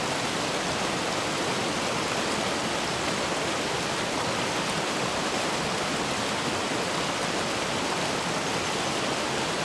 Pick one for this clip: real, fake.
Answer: real